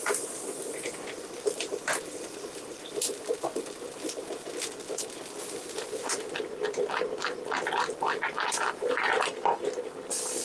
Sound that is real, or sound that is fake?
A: real